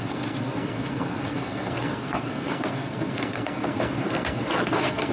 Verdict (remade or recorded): remade